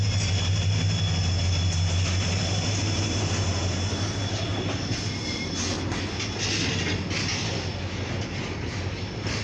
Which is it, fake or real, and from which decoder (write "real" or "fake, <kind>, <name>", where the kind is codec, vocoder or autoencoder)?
real